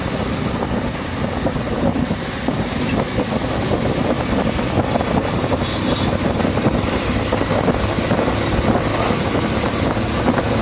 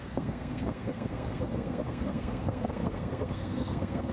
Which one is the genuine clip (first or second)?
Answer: first